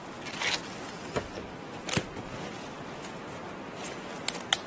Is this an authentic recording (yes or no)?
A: yes